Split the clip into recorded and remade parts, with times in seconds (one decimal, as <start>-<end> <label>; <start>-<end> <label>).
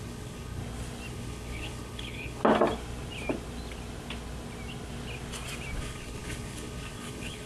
0.0-0.6 remade; 0.6-1.1 recorded; 1.1-2.4 remade; 2.4-5.8 recorded; 5.8-7.5 remade